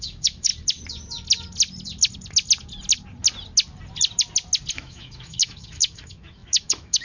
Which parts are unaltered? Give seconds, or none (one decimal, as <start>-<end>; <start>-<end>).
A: 0.5-4.7